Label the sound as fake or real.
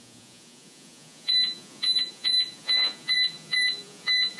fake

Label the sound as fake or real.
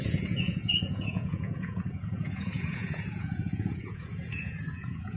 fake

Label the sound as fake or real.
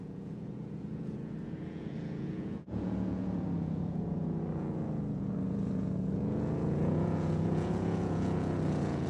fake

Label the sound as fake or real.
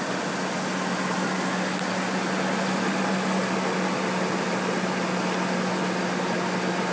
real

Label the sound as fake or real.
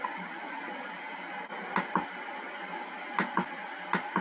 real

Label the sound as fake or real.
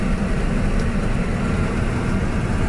real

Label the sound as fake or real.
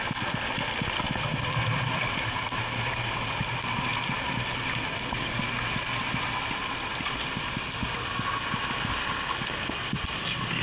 real